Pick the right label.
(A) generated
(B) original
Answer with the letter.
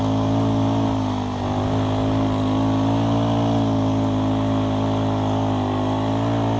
B